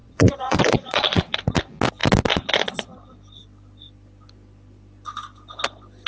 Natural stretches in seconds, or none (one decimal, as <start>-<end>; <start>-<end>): 1.3-6.1